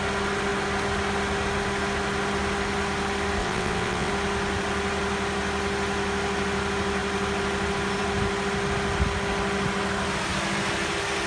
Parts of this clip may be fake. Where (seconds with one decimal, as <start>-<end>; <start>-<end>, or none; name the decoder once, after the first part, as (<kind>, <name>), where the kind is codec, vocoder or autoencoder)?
3.4-4.1 (vocoder, WaveNeXt)